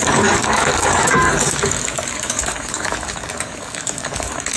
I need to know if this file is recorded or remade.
remade